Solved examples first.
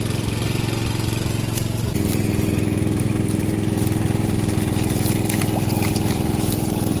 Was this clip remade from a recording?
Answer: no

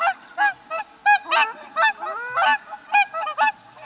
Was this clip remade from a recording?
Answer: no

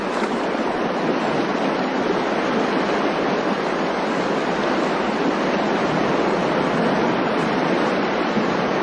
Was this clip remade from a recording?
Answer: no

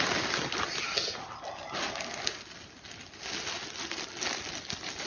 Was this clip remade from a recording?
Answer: no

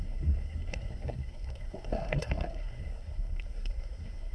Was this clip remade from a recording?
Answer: yes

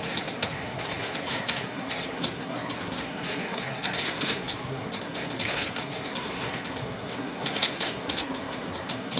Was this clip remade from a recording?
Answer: yes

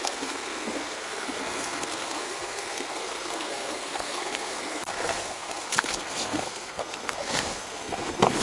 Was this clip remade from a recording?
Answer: yes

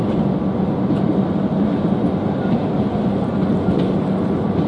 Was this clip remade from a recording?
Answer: no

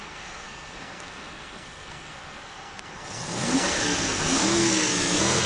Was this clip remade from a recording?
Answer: yes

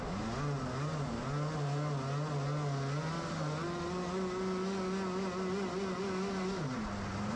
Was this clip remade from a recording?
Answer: no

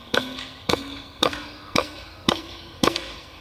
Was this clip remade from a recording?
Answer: yes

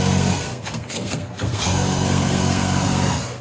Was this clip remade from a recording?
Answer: yes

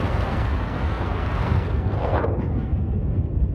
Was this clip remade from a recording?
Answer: yes